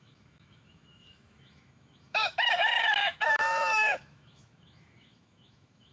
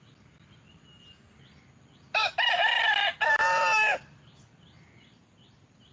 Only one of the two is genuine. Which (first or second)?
second